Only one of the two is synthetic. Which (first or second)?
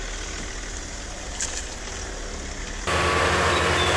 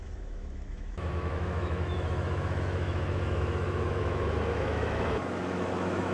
second